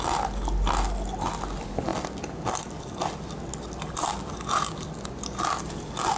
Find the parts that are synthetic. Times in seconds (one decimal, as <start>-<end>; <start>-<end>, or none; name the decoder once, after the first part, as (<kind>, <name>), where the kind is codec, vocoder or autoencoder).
none